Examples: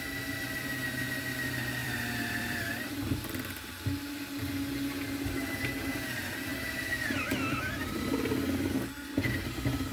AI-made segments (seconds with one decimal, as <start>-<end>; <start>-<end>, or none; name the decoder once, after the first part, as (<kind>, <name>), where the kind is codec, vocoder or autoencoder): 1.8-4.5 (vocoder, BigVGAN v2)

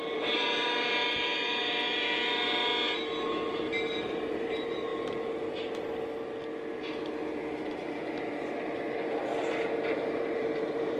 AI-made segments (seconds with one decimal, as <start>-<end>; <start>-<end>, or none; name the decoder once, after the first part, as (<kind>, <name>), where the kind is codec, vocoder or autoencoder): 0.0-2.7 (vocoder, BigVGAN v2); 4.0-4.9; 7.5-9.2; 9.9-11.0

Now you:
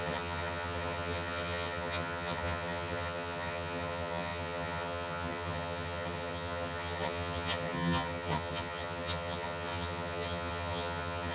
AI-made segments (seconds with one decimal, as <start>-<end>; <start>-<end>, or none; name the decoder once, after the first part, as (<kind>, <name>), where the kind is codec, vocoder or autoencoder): 0.0-11.3 (vocoder, HiFi-GAN)